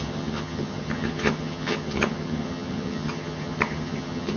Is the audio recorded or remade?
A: remade